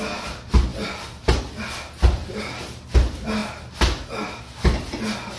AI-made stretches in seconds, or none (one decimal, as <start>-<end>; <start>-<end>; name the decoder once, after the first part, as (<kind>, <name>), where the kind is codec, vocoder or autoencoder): none